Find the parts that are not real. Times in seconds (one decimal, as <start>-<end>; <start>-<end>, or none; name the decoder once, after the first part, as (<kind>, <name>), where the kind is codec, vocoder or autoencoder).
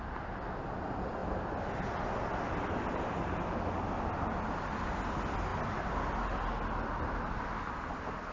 none